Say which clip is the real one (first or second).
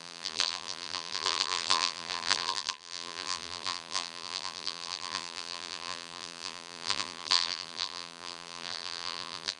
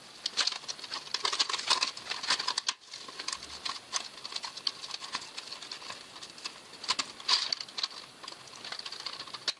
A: second